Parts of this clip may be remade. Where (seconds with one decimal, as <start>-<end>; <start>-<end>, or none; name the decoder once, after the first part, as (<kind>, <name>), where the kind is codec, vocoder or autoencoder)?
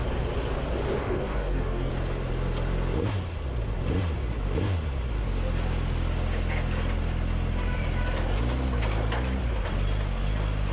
1.0-1.9 (codec, DAC)